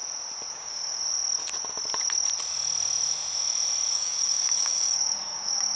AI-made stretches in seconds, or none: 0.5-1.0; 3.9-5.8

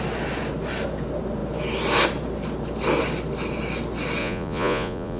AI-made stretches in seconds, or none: 4.2-5.2

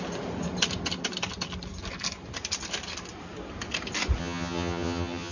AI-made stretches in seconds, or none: 4.2-5.3

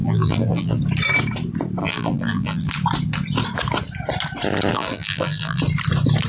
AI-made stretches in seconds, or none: 0.0-0.8; 1.8-2.7; 4.7-5.6